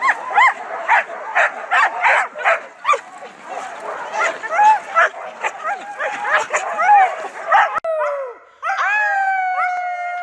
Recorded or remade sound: recorded